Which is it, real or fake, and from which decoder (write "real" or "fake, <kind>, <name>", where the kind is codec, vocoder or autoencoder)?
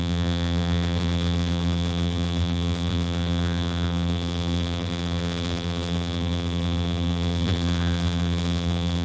fake, vocoder, BigVGAN v2